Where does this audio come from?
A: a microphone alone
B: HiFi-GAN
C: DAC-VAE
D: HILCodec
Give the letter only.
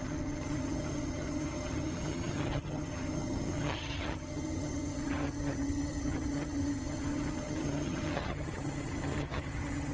B